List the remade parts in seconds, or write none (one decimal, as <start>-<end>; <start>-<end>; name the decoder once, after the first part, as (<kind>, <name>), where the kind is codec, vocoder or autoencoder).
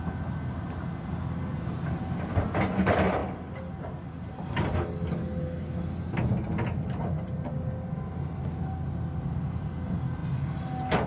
none